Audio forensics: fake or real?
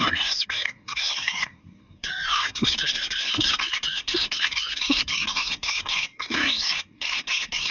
fake